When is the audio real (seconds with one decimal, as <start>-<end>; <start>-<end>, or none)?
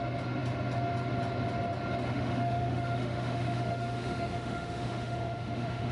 0.0-2.1